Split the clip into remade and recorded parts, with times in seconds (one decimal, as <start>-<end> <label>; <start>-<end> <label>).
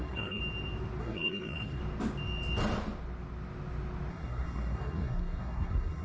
0.0-0.4 remade; 0.4-1.0 recorded; 1.0-1.8 remade; 1.8-4.1 recorded; 4.1-6.0 remade